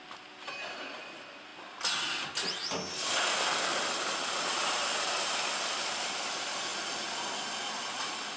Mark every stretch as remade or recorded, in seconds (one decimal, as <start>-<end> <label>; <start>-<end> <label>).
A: 0.0-8.4 recorded